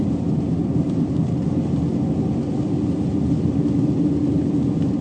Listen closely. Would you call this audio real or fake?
real